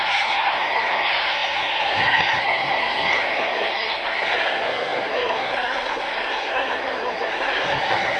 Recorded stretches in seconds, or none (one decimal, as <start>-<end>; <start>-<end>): none